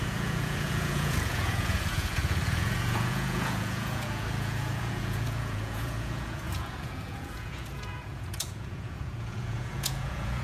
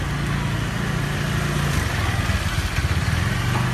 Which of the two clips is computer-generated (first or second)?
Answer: first